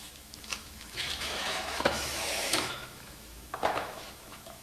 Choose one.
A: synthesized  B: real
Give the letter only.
A